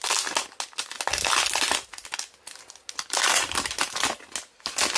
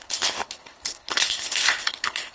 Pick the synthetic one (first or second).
second